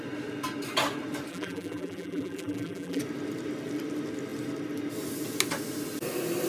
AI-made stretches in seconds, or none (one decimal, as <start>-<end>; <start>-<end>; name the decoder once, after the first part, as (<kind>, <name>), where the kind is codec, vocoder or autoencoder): 1.3-3.0 (vocoder, BigVGAN v2)